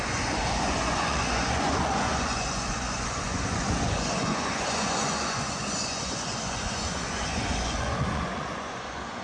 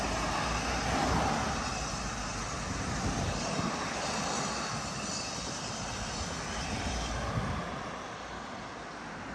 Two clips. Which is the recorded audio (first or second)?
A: second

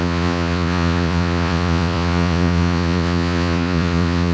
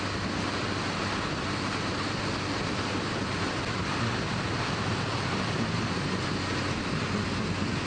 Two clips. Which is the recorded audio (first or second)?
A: second